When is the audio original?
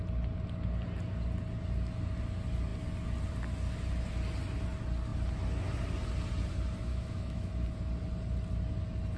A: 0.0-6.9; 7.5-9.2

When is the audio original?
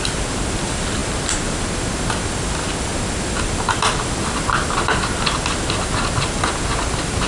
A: 0.0-7.3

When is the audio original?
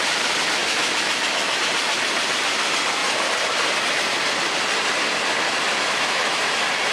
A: 0.0-0.6; 1.6-5.7; 6.4-6.9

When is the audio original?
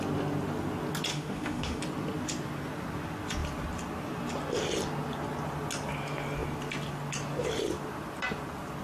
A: 0.0-1.1; 1.8-8.8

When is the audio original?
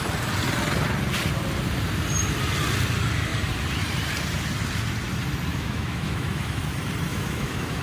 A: 0.0-5.5; 6.6-7.1